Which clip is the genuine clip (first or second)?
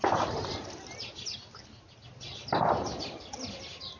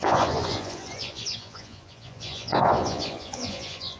first